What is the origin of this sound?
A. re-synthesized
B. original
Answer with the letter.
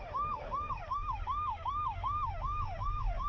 A